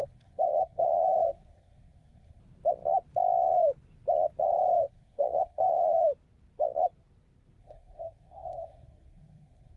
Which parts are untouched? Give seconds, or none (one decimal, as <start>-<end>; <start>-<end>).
2.4-4.8; 6.0-7.6